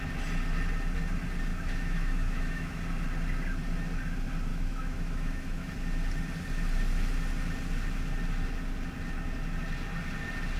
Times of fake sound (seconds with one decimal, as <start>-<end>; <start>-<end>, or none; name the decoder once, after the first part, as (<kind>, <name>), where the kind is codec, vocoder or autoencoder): 1.5-2.8 (autoencoder, DAC-VAE); 4.5-5.7